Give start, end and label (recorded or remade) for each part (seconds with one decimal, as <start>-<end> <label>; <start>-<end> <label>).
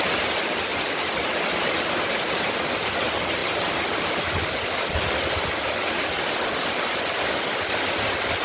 0.0-8.4 recorded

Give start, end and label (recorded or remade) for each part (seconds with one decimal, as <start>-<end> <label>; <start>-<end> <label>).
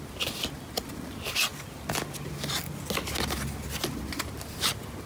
0.0-5.1 recorded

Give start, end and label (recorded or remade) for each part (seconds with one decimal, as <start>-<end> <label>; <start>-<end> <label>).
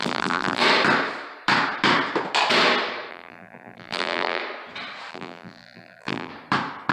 0.0-0.6 remade; 0.6-3.1 recorded; 3.1-4.4 remade; 4.4-5.1 recorded; 5.1-6.3 remade; 6.3-6.9 recorded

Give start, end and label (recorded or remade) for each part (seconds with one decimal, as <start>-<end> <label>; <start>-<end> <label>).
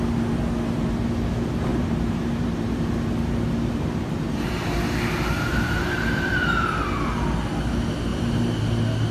0.0-1.7 recorded; 1.7-4.8 remade; 4.8-5.5 recorded; 5.5-6.3 remade; 6.3-8.1 recorded; 8.1-8.6 remade; 8.6-9.1 recorded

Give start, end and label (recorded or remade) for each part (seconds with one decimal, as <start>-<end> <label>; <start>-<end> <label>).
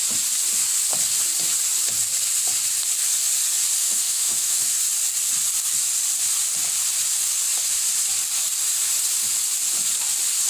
0.0-3.8 recorded; 3.8-4.8 remade; 4.8-10.5 recorded